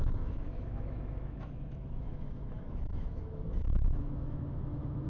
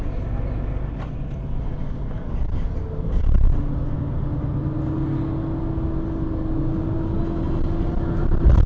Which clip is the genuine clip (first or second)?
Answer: second